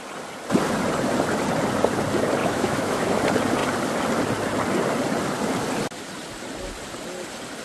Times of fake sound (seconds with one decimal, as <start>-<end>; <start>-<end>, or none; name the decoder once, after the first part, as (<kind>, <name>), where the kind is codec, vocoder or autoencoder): 2.4-3.2 (autoencoder, DAC-VAE)